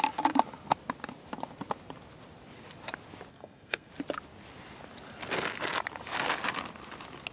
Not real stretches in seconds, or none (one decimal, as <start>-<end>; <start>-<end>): 3.3-3.9